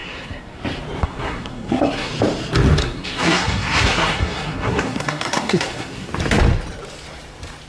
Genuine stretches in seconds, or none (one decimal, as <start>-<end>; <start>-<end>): 0.6-1.0; 2.1-2.8; 6.1-7.7